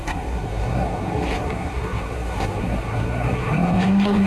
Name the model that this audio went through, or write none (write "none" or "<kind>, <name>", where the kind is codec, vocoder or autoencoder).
codec, SNAC